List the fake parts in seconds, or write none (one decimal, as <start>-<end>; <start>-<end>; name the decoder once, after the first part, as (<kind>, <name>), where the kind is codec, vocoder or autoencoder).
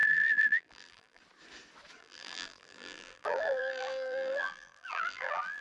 0.0-1.2 (vocoder, BigVGAN v2); 2.0-5.6